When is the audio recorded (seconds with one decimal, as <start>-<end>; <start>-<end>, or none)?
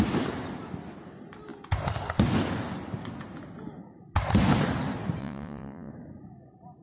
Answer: 0.0-5.2; 5.9-6.8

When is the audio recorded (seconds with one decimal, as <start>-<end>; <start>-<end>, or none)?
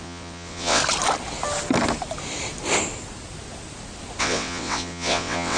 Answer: 0.8-4.2